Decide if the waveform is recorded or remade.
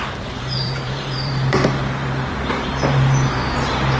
remade